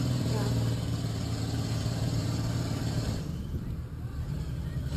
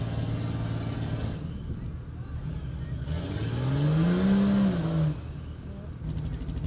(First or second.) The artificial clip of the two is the first